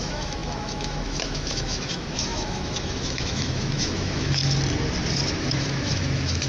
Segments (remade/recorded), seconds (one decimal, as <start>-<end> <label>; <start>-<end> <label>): 0.0-4.4 remade; 4.4-5.4 recorded; 5.4-6.5 remade